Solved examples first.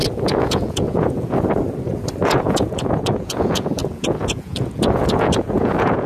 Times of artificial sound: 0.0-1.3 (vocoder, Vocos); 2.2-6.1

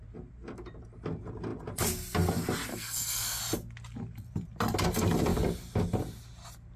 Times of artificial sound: 2.7-3.4 (codec, SNAC)